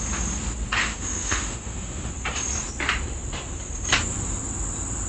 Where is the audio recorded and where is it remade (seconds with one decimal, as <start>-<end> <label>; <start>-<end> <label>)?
0.0-0.8 recorded; 0.8-2.1 remade; 2.1-5.1 recorded